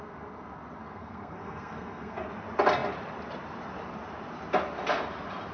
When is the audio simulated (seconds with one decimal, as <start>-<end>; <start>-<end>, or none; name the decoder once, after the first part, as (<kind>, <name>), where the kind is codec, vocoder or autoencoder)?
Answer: 0.8-2.2 (codec, SNAC)